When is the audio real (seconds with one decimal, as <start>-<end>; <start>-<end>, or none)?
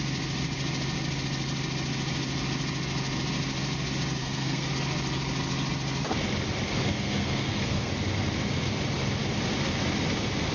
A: 0.0-4.2; 4.7-6.8; 7.9-10.5